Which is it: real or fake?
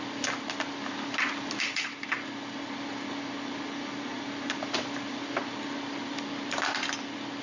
real